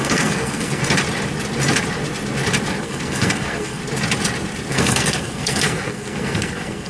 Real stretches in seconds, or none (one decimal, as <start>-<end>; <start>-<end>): 0.8-2.7; 3.8-4.7